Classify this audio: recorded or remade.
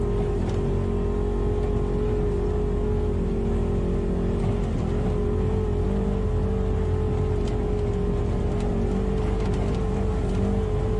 recorded